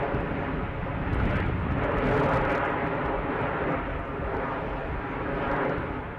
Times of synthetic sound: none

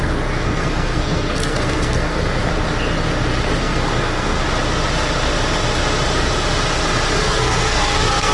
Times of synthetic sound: 0.0-2.4 (codec, SNAC); 3.6-4.4; 7.2-8.3